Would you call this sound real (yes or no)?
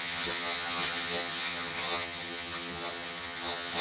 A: no